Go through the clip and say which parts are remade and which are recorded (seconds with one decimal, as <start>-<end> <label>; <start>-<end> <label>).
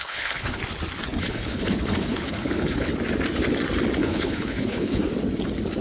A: 0.0-0.6 remade; 0.6-1.2 recorded; 1.2-2.9 remade; 2.9-4.0 recorded; 4.0-5.0 remade; 5.0-5.8 recorded